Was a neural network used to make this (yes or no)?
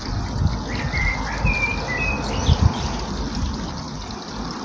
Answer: no